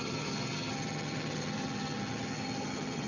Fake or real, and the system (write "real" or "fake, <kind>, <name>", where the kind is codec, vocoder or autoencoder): fake, vocoder, HiFi-GAN